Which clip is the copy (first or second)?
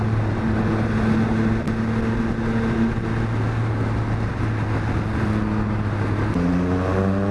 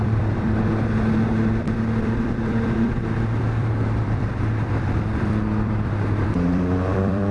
second